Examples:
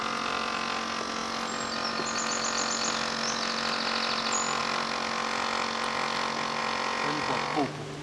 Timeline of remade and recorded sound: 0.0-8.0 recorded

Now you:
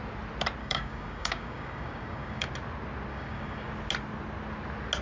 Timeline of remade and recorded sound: 0.0-0.6 recorded; 0.6-2.5 remade; 2.5-3.1 recorded; 3.1-3.7 remade; 3.7-5.0 recorded

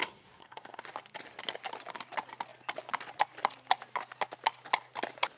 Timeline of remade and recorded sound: 0.0-0.8 remade; 0.8-5.4 recorded